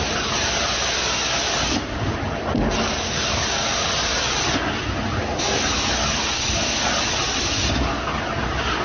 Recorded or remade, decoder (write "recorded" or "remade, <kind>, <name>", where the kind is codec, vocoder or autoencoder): recorded